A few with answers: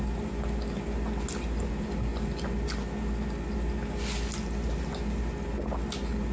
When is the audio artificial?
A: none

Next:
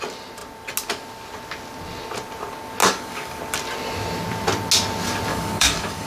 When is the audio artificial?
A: 2.8-3.4 (codec, DAC); 5.3-6.1

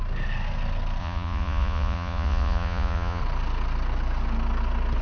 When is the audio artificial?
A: 1.0-3.2 (vocoder, Vocos)

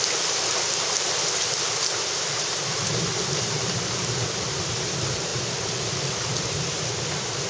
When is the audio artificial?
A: 0.0-7.5 (vocoder, BigVGAN v2)

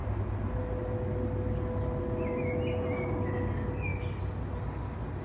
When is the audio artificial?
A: none

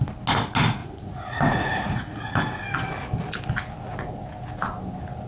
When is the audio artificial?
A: 0.8-2.4 (vocoder, Vocos)

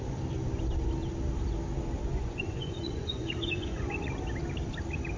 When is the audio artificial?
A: 2.1-4.1 (vocoder, Vocos)

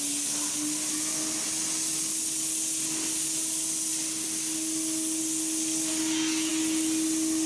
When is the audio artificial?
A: none